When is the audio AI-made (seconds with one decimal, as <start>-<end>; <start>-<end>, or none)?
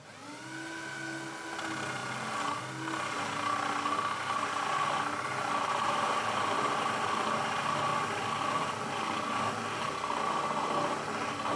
none